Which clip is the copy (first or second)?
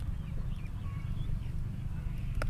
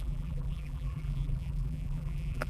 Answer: second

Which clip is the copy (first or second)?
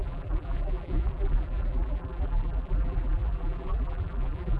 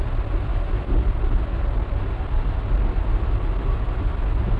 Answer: first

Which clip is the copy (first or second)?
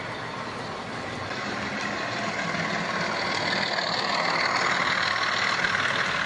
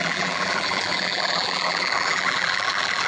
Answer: second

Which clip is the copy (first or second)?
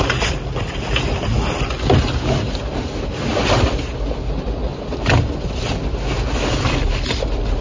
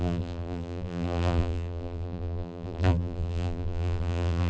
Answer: second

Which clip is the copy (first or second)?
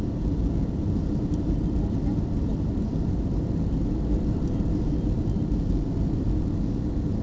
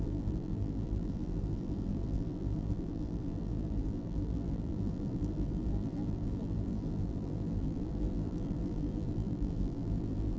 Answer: second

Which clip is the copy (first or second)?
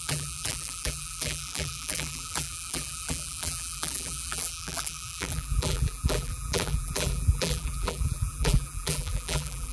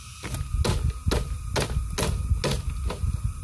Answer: first